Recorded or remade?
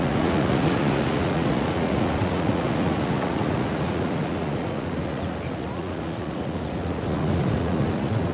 remade